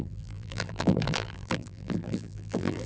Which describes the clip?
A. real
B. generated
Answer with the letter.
B